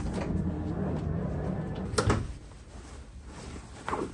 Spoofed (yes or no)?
no